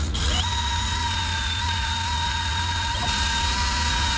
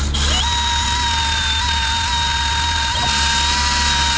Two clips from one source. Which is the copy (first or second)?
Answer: first